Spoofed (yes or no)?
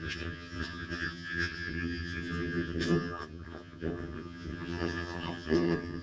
yes